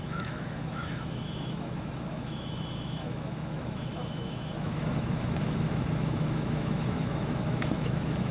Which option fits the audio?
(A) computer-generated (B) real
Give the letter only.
A